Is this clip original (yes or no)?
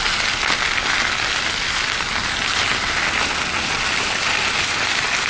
yes